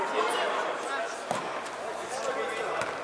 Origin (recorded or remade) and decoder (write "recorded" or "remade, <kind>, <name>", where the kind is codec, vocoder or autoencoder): recorded